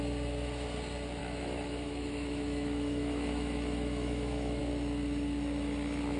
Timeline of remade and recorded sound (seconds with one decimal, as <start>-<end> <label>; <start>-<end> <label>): 0.0-1.2 recorded; 1.2-4.6 remade; 4.6-6.2 recorded